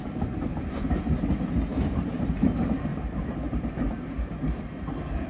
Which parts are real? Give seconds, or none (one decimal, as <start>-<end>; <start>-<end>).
0.0-0.5; 1.1-1.7; 2.3-2.9; 4.5-5.3